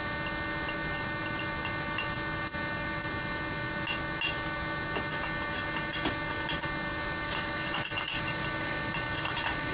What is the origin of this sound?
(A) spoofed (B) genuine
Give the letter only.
B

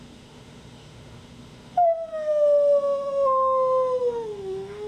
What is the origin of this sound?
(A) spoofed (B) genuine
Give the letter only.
A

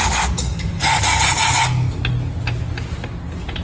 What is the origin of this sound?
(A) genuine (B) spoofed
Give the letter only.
A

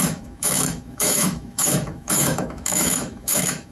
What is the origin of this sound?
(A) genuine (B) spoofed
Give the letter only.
B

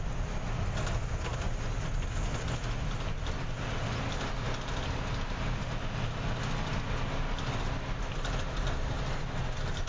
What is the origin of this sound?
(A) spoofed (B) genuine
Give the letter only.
B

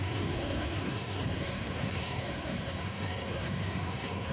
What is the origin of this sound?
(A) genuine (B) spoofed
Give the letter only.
B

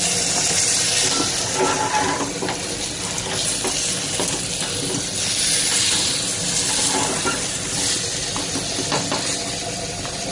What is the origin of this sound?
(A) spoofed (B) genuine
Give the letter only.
B